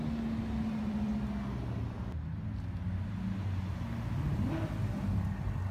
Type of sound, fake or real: real